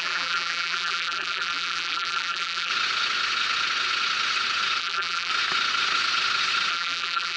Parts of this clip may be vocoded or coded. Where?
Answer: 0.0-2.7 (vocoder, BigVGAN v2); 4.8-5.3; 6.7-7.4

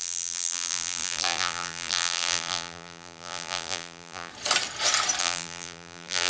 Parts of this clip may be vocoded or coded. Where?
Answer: 0.0-4.3 (vocoder, BigVGAN v2); 5.2-6.3

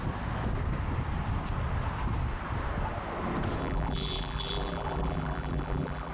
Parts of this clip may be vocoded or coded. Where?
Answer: 3.6-6.1 (vocoder, BigVGAN v2)